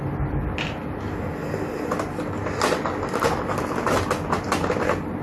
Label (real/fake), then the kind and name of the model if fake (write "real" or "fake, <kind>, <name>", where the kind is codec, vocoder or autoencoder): real